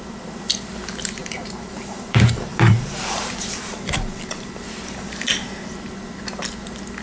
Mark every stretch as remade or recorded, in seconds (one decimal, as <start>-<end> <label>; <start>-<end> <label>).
0.0-1.2 recorded; 1.2-5.1 remade; 5.1-7.0 recorded